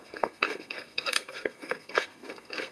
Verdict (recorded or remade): remade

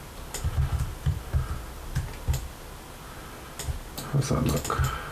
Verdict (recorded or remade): recorded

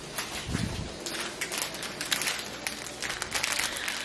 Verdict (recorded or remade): recorded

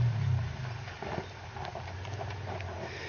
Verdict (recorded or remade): recorded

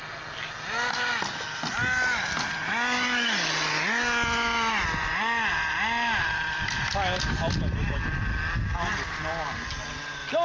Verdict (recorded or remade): recorded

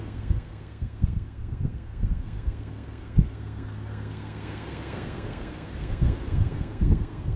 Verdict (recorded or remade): remade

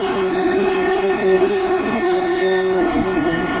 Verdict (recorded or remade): remade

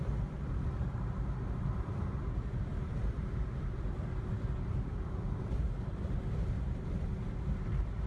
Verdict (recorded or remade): recorded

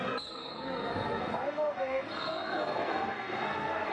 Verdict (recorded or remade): remade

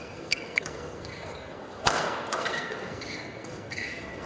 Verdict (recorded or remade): remade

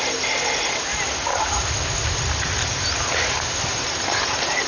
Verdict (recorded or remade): recorded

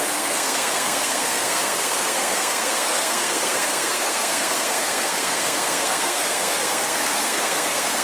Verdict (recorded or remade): remade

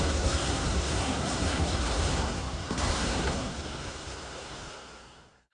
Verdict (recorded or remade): remade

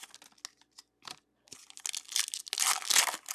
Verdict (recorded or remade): recorded